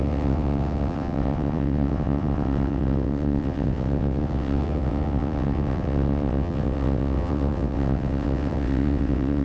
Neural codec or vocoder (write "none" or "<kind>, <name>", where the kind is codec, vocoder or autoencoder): vocoder, WaveNeXt